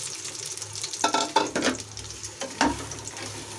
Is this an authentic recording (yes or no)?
yes